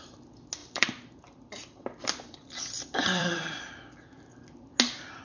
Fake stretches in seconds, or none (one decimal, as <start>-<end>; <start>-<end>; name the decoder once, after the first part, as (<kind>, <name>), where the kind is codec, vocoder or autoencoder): 0.6-3.7 (vocoder, BigVGAN v2)